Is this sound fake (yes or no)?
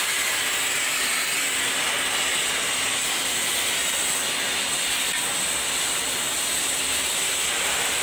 no